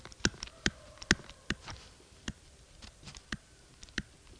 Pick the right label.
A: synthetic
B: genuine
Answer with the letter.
B